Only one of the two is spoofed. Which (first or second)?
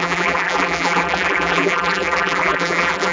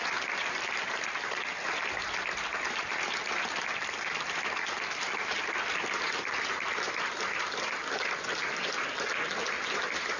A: first